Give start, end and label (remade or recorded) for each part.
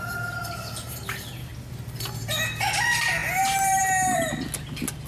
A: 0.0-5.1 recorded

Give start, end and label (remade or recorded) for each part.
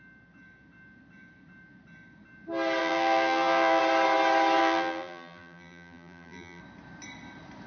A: 0.0-2.8 recorded; 2.8-3.8 remade; 3.8-4.6 recorded; 4.6-6.6 remade; 6.6-7.7 recorded